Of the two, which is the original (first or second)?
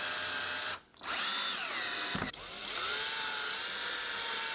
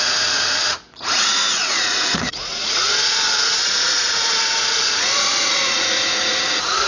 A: first